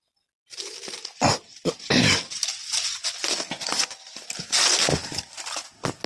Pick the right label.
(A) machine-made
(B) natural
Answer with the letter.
B